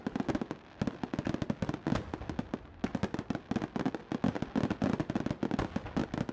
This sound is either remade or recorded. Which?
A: recorded